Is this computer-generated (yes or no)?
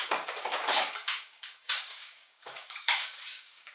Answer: yes